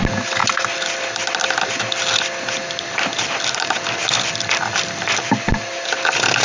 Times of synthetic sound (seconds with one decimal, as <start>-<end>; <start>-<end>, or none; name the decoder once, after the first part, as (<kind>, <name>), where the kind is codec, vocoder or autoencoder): none

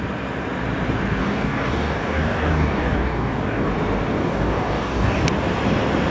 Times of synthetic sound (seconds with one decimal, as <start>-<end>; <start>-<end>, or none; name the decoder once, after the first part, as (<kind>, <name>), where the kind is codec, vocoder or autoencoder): 1.2-3.7 (codec, DAC); 4.2-5.2

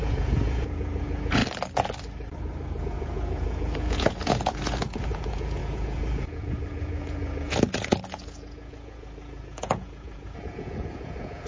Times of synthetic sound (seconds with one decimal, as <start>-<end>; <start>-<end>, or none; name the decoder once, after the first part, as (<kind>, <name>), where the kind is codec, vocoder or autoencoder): 0.0-1.4 (vocoder, Vocos); 2.8-11.5